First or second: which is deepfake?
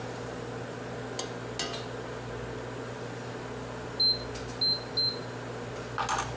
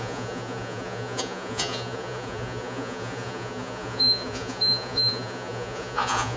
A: second